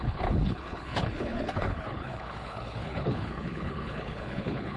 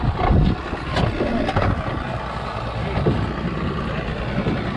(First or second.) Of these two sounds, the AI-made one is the first